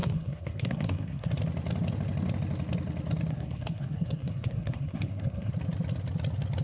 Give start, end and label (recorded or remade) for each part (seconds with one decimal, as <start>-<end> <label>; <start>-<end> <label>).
0.0-1.3 remade; 1.3-3.3 recorded; 3.3-5.5 remade; 5.5-6.6 recorded